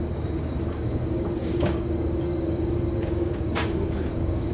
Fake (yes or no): yes